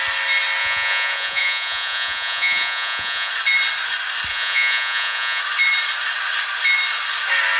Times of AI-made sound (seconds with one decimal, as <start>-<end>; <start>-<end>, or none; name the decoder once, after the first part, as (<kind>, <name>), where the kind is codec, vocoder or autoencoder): 0.6-3.3 (vocoder, Vocos); 4.3-5.4